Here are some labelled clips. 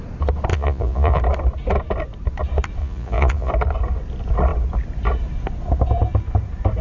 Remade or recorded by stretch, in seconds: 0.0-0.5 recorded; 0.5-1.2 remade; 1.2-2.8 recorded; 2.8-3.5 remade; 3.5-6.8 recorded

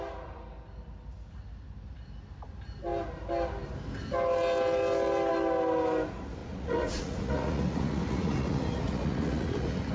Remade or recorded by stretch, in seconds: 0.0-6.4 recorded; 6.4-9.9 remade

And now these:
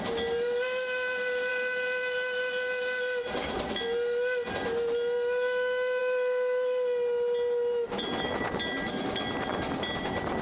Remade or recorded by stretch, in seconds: 0.0-10.4 recorded

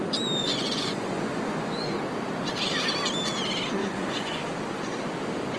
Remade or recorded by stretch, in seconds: 0.0-0.4 recorded; 0.4-1.9 remade; 1.9-3.8 recorded; 3.8-4.4 remade; 4.4-5.6 recorded

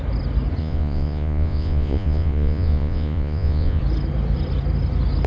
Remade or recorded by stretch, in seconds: 0.0-0.6 recorded; 0.6-3.8 remade; 3.8-5.3 recorded